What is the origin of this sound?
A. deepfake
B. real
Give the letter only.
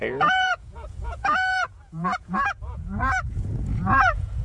A